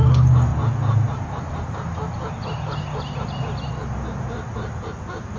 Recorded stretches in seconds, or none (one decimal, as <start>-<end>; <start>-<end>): 0.0-5.4